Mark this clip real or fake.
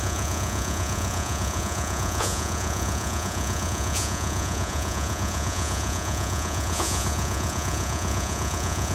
fake